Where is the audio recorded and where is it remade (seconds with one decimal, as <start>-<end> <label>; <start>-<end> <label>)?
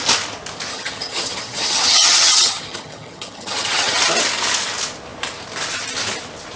0.0-0.7 recorded; 0.7-4.0 remade; 4.0-6.6 recorded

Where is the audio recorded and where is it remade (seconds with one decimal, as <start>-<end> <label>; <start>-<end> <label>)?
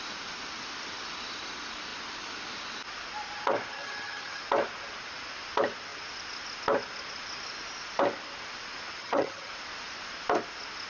0.0-3.7 recorded; 3.7-4.4 remade; 4.4-9.0 recorded; 9.0-9.5 remade; 9.5-10.9 recorded